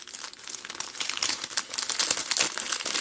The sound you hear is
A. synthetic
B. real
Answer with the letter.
B